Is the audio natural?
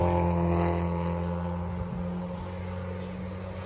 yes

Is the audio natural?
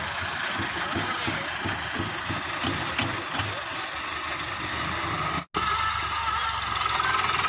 yes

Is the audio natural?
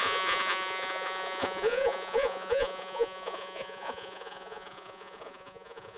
no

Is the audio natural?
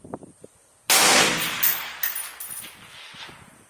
yes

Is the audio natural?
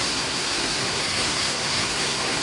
no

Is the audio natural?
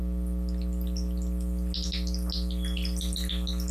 yes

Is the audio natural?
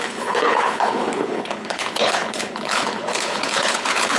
no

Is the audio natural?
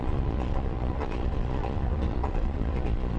no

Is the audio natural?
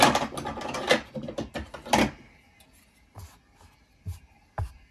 yes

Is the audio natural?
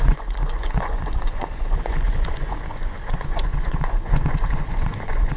no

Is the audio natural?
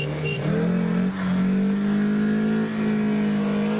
yes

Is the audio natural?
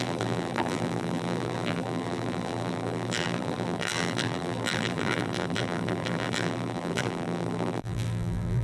no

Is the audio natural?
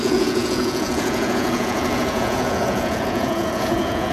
no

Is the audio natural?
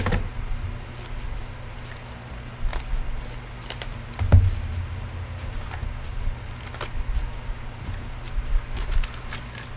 yes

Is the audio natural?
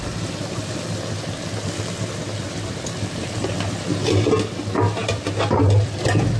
yes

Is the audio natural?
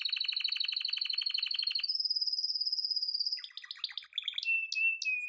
yes